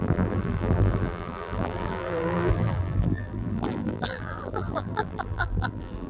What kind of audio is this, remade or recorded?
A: remade